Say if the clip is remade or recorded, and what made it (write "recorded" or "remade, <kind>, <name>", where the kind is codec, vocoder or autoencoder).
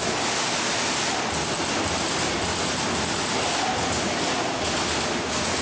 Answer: recorded